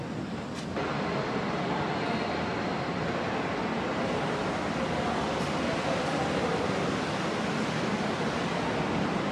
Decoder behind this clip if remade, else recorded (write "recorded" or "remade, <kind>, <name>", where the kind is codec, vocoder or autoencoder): recorded